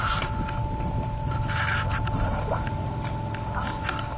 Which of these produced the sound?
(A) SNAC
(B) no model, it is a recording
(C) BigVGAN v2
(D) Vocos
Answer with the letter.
B